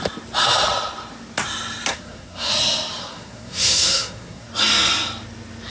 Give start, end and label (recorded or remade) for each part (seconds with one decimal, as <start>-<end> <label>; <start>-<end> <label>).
0.0-1.9 recorded; 1.9-2.5 remade; 2.5-3.0 recorded; 3.0-4.5 remade; 4.5-5.7 recorded

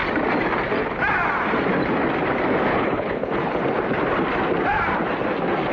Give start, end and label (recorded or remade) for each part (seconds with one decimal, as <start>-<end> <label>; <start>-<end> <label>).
0.0-2.7 recorded; 2.7-3.6 remade; 3.6-5.7 recorded